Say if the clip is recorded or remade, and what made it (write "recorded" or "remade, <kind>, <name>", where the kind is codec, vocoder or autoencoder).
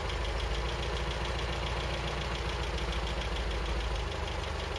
recorded